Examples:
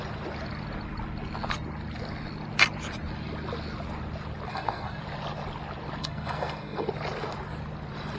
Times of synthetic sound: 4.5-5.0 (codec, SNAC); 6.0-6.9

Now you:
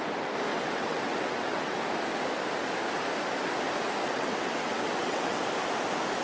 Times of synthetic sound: 0.5-1.8 (vocoder, WaveNeXt); 4.0-5.4

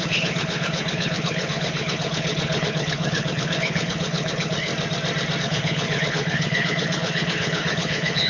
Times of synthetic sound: 0.0-4.7 (codec, HILCodec); 5.4-8.3